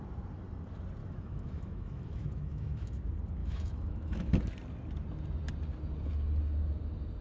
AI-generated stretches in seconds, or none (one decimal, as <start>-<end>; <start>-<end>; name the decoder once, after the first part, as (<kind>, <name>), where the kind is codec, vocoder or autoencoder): 1.0-3.0 (autoencoder, DAC-VAE); 3.4-4.3